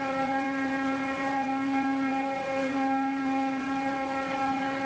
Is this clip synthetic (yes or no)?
yes